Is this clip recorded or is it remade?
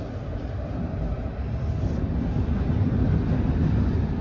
recorded